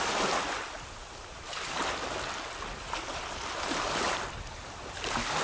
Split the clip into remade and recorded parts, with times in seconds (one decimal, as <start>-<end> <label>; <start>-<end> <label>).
0.0-5.4 recorded